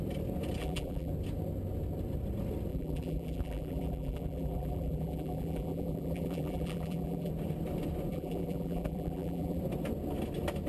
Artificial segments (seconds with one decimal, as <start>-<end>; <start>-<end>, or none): 0.6-1.1; 2.7-7.3; 8.1-9.6